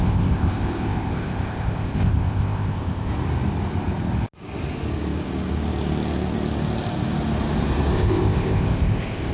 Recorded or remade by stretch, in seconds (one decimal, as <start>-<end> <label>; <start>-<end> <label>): 0.0-3.1 remade; 3.1-7.9 recorded; 7.9-9.3 remade